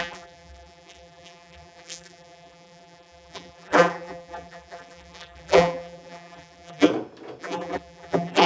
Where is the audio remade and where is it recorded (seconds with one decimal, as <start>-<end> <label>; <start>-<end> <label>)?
0.0-6.9 remade; 6.9-7.4 recorded; 7.4-8.5 remade